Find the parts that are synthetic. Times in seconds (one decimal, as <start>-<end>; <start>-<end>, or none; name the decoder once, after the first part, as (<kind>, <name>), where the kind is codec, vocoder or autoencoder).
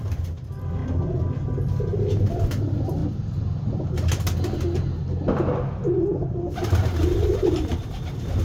0.0-0.8 (vocoder, BigVGAN v2); 2.2-3.0; 5.7-8.4